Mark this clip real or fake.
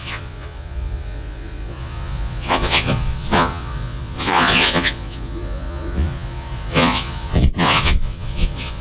fake